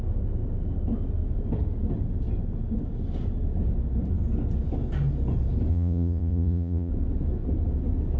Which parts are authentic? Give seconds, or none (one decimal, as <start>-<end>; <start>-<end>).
0.0-5.7; 6.9-8.2